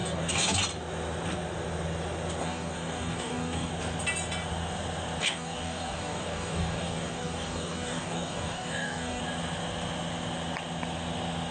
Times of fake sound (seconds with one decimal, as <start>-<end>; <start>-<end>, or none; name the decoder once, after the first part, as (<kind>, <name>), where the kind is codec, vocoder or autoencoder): 0.0-0.6 (codec, DAC); 2.4-3.7; 5.2-9.2